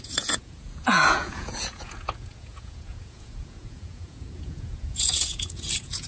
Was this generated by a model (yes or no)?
yes